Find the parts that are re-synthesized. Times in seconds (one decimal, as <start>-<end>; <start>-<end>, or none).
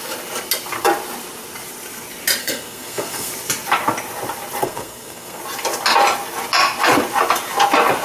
2.4-3.3; 4.6-5.4